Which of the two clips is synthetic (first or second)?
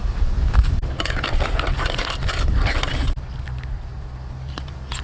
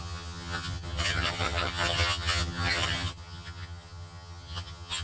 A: second